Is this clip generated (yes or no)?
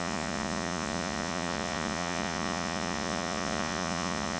yes